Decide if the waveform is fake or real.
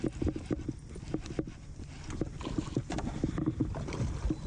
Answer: real